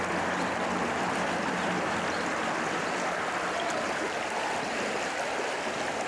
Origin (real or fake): real